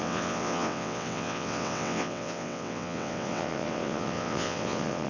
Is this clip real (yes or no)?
no